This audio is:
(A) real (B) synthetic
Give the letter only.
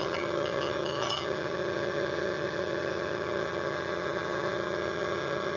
B